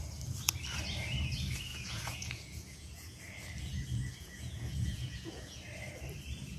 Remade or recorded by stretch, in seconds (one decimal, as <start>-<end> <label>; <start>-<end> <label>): 0.0-1.7 recorded; 1.7-3.2 remade; 3.2-4.1 recorded; 4.1-5.6 remade; 5.6-6.6 recorded